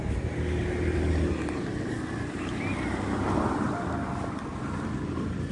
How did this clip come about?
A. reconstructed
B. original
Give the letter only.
B